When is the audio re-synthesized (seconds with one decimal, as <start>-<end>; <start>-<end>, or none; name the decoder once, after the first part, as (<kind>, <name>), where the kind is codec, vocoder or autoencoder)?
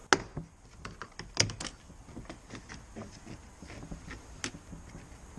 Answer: none